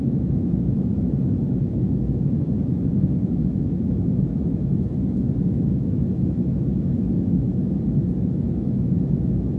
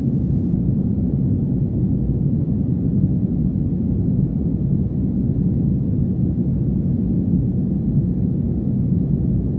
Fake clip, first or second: first